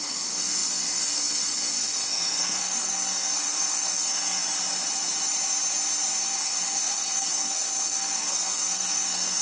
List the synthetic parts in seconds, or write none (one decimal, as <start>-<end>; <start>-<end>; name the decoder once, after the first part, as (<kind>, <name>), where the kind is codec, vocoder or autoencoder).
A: 0.0-4.4 (codec, SNAC); 6.2-9.4